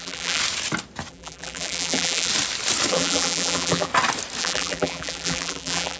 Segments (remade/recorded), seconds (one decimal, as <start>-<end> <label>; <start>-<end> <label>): 0.0-0.4 remade; 0.4-1.1 recorded; 1.1-2.3 remade; 2.3-2.9 recorded; 2.9-3.9 remade; 3.9-4.4 recorded; 4.4-6.0 remade